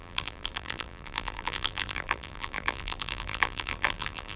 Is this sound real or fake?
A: fake